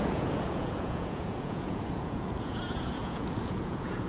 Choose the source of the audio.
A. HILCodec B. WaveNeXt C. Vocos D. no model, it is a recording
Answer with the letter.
C